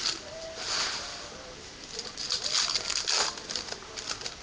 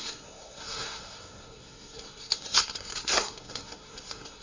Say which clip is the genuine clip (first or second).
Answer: first